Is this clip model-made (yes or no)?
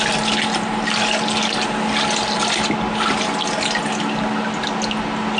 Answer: no